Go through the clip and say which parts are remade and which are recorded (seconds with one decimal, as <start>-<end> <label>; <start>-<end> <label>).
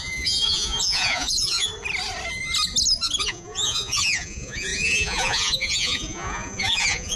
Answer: 0.0-1.7 remade; 1.7-3.2 recorded; 3.2-7.2 remade